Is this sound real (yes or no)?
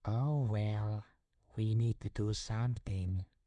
no